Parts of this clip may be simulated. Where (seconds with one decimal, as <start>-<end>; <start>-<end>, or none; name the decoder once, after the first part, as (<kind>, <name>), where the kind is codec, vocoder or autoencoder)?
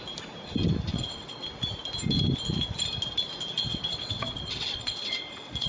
0.9-1.4 (vocoder, WaveNeXt); 3.7-5.7